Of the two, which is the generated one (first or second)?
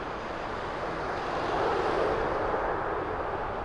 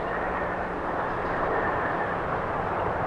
second